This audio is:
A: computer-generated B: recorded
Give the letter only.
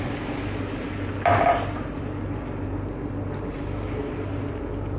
B